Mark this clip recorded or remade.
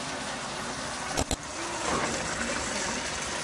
recorded